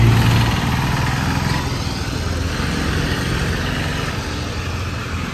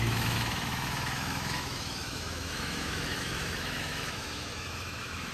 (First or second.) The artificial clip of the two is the second